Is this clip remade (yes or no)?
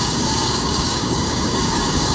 yes